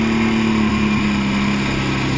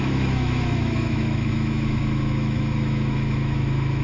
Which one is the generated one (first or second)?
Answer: second